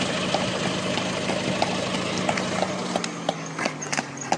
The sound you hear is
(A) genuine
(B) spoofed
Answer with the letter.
A